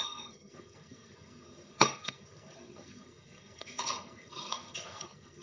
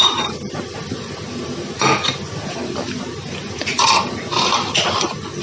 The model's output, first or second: first